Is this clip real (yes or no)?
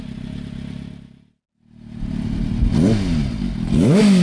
yes